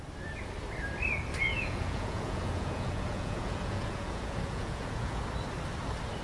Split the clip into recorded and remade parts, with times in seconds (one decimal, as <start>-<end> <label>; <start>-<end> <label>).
0.0-1.5 recorded; 1.5-5.2 remade; 5.2-6.2 recorded